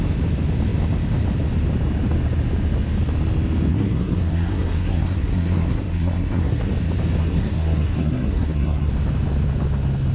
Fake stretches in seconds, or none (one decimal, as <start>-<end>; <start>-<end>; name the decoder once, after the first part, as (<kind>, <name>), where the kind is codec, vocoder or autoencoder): 3.7-6.7 (codec, SNAC); 7.2-8.9